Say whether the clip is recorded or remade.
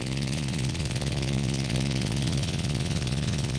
remade